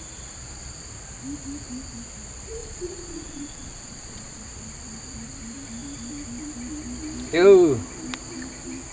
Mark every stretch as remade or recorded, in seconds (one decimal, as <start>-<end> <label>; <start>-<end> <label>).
0.0-2.6 recorded; 2.6-4.4 remade; 4.4-8.9 recorded